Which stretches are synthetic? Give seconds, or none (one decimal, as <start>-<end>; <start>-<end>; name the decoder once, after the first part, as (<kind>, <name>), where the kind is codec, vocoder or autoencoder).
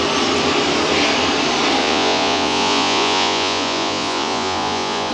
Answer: 1.8-5.1 (vocoder, Vocos)